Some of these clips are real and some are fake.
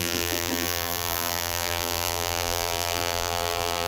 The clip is fake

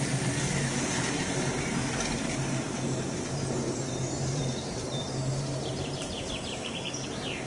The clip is fake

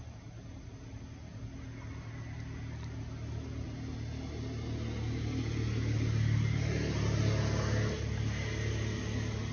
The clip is real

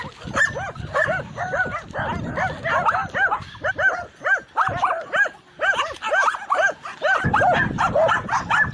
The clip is real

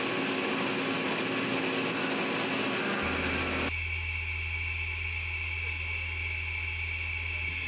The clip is real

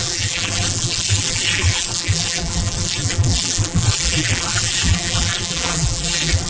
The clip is fake